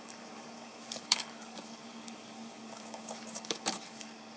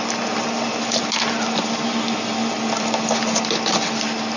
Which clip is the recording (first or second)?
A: second